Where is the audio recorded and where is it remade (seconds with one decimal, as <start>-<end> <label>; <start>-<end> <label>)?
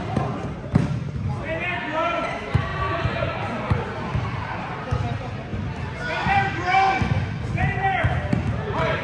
0.0-5.5 recorded; 5.5-7.0 remade; 7.0-9.0 recorded